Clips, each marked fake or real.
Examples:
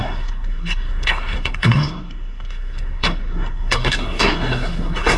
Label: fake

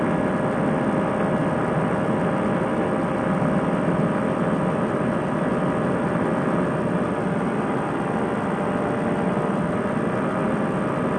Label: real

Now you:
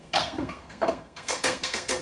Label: fake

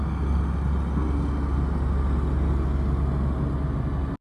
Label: real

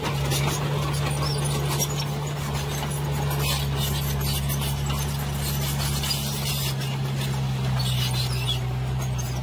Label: real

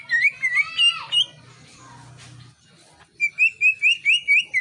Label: real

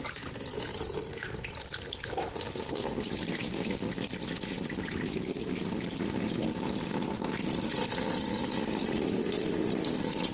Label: real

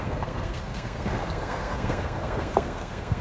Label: fake